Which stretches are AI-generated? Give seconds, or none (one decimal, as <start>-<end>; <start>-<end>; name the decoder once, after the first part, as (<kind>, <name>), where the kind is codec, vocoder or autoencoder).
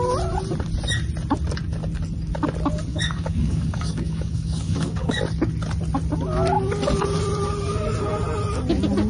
2.9-5.2 (codec, DAC)